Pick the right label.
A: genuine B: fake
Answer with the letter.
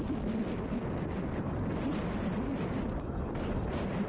A